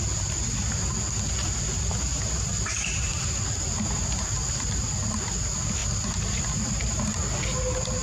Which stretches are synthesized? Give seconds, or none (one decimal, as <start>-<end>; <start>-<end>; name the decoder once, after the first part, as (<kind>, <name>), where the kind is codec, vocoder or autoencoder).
2.5-3.1 (vocoder, BigVGAN v2)